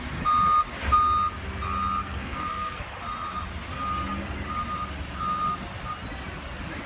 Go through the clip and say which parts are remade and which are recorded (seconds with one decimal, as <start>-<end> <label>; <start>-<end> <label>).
0.0-2.0 recorded; 2.0-2.8 remade; 2.8-6.9 recorded